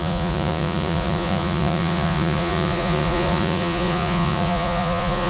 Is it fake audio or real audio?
fake